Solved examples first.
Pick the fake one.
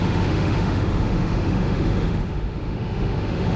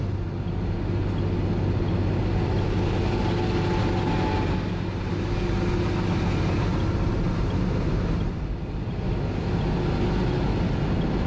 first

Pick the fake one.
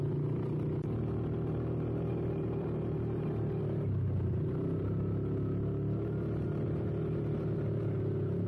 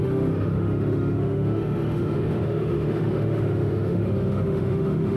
second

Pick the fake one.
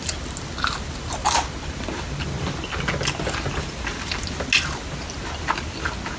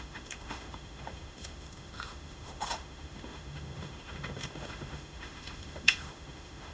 second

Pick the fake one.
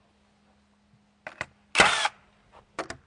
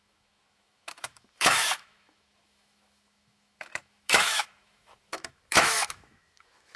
second